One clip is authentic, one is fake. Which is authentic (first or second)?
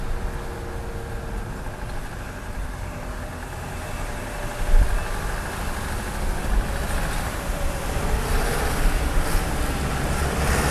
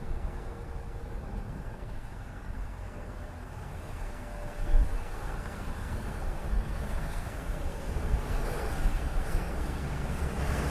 first